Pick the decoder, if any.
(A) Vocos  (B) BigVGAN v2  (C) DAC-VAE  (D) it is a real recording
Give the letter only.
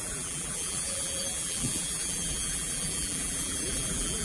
B